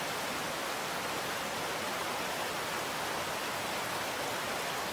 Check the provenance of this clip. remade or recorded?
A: recorded